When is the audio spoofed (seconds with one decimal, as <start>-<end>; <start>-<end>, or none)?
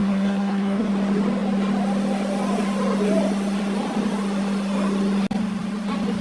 0.0-0.9